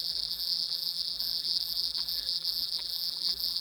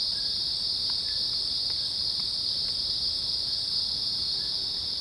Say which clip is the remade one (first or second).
first